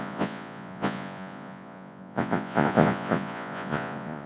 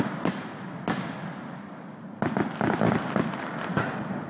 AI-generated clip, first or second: first